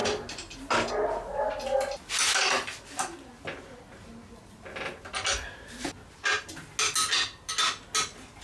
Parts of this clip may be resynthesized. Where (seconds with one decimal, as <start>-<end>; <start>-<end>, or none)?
none